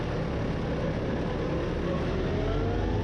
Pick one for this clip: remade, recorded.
recorded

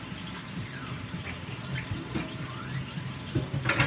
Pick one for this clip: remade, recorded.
recorded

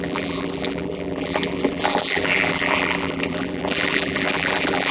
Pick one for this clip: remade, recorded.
remade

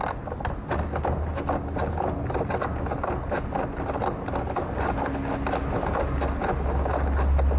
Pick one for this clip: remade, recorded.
recorded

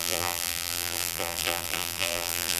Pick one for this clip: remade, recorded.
remade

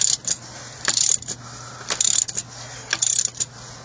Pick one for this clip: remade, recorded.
recorded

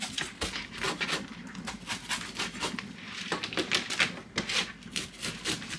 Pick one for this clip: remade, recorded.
recorded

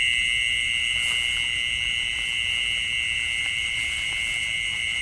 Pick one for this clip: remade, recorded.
recorded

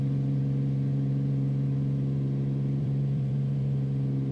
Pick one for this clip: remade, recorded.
remade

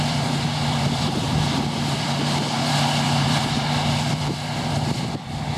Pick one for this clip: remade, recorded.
remade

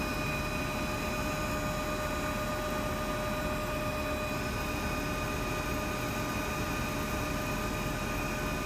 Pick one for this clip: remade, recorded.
recorded